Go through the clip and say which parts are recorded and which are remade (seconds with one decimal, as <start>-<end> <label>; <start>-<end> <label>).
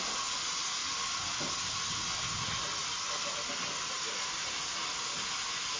0.0-5.8 recorded